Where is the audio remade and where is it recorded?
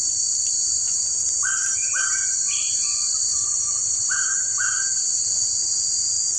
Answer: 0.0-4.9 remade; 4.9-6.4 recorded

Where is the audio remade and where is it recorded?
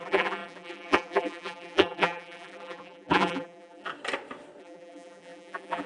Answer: 0.0-3.9 remade; 3.9-4.6 recorded; 4.6-5.9 remade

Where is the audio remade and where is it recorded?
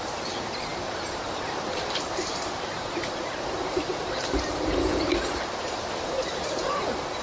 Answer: 0.0-7.2 remade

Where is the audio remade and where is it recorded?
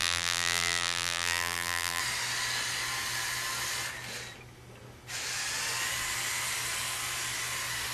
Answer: 0.0-2.0 remade; 2.0-7.9 recorded